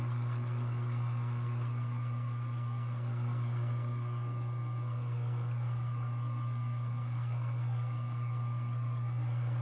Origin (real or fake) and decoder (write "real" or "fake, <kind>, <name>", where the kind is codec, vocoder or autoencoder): fake, codec, SNAC